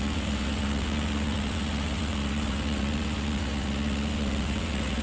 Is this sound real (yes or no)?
no